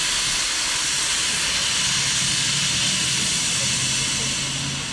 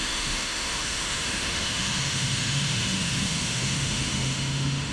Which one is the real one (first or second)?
first